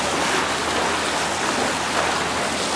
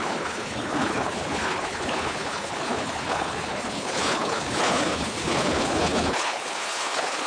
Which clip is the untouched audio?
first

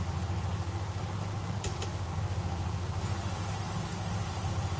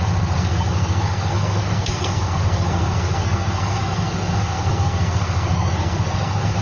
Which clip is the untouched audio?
first